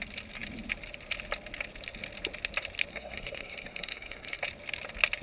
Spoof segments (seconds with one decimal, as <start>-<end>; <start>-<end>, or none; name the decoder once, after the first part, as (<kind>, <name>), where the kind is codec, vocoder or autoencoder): 2.9-4.4 (codec, SNAC)